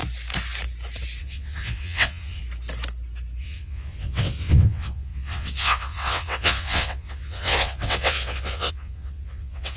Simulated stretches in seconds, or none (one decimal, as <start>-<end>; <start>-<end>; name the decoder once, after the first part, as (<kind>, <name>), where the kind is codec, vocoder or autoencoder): 1.2-2.4 (vocoder, WaveNeXt); 3.4-9.8